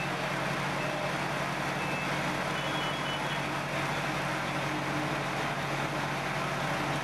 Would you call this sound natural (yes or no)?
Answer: yes